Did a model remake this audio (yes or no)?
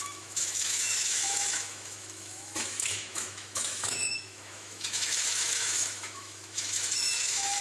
yes